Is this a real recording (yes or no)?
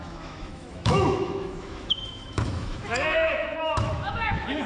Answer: no